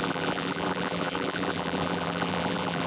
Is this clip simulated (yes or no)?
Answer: yes